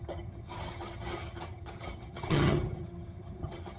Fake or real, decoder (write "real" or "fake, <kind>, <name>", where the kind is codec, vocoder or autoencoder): fake, vocoder, HiFi-GAN